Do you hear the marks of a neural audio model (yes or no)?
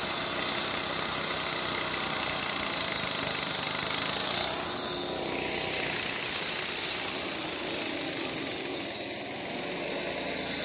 no